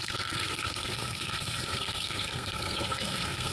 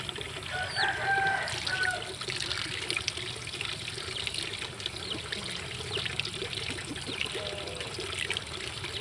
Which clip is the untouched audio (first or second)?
second